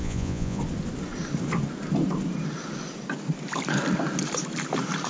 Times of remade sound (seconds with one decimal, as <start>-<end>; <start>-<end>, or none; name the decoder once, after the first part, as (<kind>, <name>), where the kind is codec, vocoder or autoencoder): 0.0-0.6 (vocoder, Vocos)